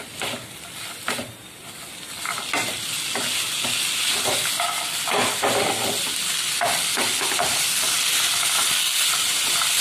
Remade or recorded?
recorded